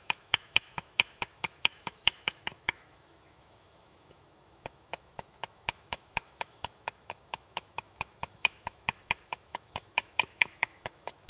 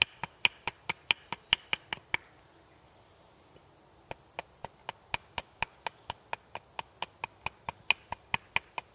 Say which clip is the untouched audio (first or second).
second